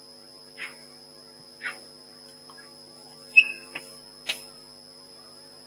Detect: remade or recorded remade